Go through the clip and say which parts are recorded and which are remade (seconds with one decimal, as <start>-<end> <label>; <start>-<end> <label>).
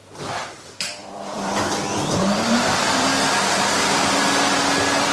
0.0-1.0 recorded; 1.0-4.1 remade; 4.1-5.1 recorded